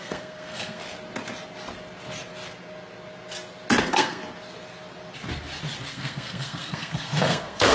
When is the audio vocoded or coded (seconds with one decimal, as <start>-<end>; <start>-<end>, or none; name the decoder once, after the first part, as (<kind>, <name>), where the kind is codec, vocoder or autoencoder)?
0.0-0.8 (codec, SNAC); 3.8-4.2; 5.9-7.7